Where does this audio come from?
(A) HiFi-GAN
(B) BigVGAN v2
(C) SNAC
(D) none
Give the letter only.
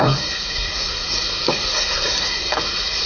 C